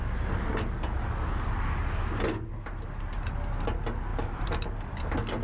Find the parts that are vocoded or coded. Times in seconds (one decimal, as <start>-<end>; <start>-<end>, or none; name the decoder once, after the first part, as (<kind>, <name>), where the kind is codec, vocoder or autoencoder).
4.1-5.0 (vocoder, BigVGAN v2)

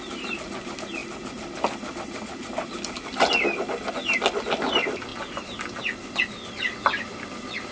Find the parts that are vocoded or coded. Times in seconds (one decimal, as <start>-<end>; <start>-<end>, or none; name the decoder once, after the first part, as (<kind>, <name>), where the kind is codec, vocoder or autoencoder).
none

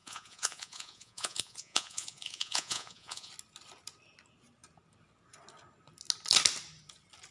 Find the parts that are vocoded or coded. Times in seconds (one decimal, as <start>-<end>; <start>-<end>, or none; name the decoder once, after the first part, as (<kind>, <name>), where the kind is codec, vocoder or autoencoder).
0.0-3.3 (vocoder, Vocos)